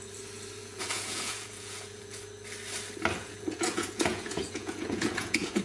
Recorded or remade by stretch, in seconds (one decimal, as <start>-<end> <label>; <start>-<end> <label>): 0.0-0.6 recorded; 0.6-2.2 remade; 2.2-3.2 recorded; 3.2-5.6 remade